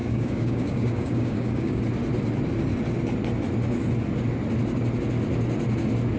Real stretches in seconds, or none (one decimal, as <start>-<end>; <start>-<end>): 1.8-6.2